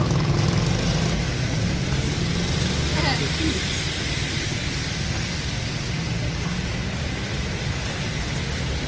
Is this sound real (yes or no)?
yes